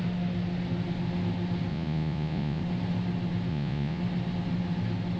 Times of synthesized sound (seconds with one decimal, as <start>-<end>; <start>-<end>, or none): 1.7-2.6; 3.5-4.0